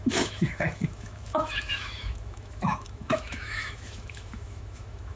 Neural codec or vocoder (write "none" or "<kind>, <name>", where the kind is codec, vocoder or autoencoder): autoencoder, DAC-VAE